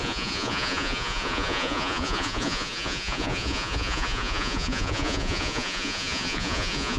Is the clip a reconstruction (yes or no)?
yes